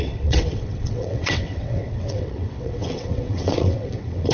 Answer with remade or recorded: remade